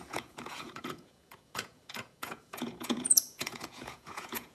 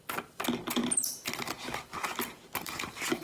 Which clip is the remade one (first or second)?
first